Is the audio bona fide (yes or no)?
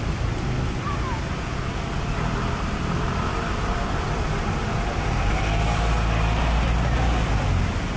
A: yes